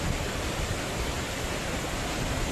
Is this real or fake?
real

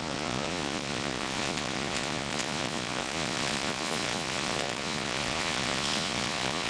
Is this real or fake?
fake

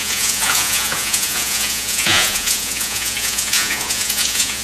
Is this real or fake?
fake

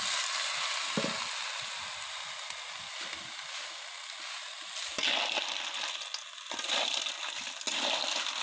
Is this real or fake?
real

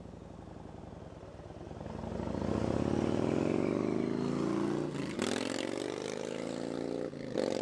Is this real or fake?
real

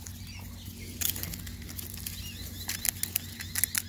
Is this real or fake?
real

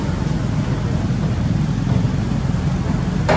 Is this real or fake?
real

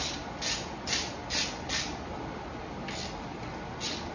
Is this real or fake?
real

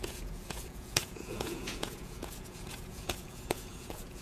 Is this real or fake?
fake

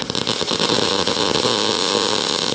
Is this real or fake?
real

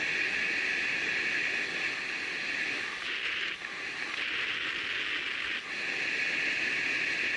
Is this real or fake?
real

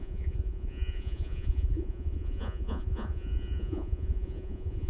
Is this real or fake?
fake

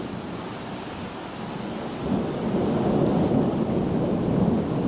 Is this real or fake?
real